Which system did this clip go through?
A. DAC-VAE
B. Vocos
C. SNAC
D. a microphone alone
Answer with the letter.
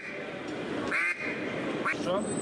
D